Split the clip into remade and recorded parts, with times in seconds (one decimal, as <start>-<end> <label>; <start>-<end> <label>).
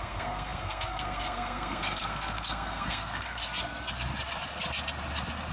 0.0-3.4 remade; 3.4-5.5 recorded